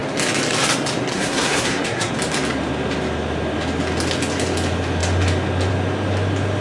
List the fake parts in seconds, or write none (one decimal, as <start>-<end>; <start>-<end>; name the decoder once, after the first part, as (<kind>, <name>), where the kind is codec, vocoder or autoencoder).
1.1-2.1 (codec, SNAC)